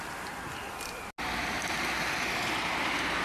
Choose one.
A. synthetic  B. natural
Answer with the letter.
B